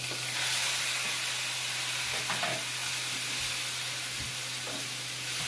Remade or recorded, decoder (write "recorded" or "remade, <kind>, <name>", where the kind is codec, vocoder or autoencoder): recorded